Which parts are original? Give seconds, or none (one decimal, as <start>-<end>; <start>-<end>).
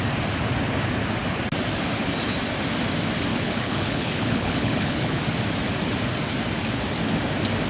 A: 0.0-3.3; 5.2-7.7